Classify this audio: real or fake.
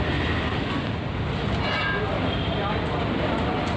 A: real